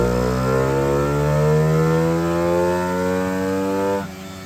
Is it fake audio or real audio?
real